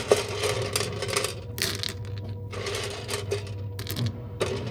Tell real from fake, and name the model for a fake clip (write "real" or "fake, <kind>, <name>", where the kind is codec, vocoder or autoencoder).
real